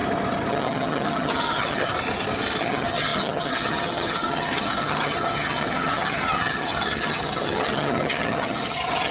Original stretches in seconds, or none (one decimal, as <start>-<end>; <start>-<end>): 0.0-0.5; 1.9-2.6